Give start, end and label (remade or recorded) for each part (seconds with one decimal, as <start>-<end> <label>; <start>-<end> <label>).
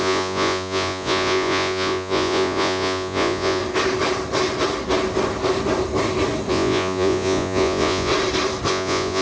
0.0-3.6 remade; 3.6-6.5 recorded; 6.5-8.1 remade; 8.1-8.7 recorded; 8.7-9.2 remade